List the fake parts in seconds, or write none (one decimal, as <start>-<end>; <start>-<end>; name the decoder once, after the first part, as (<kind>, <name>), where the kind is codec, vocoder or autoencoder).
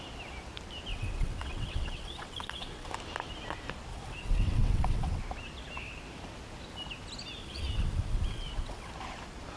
0.9-2.9 (vocoder, WaveNeXt); 3.9-5.2; 7.4-8.9